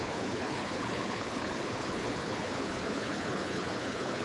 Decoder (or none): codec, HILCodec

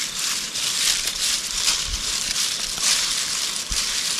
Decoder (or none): vocoder, BigVGAN v2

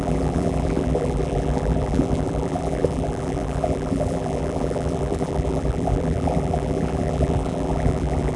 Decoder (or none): vocoder, BigVGAN v2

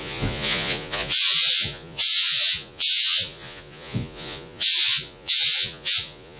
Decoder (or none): vocoder, Vocos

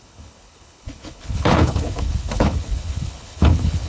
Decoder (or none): codec, HILCodec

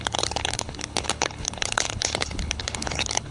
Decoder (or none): codec, HILCodec